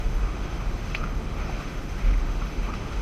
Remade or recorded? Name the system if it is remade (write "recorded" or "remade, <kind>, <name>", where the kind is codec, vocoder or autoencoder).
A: remade, autoencoder, DAC-VAE